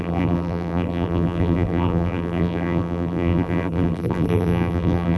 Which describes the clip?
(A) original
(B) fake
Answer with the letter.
B